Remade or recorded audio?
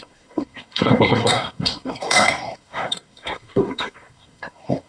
remade